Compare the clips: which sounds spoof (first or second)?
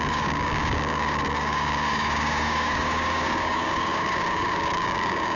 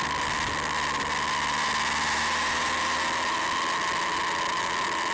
first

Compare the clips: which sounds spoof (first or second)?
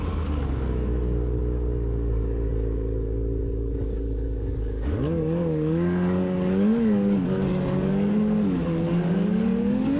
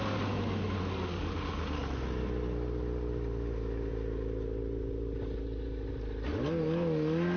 first